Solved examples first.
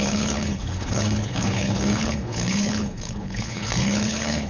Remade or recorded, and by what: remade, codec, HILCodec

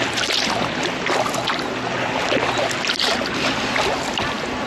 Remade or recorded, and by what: recorded